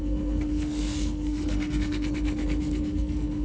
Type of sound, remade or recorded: remade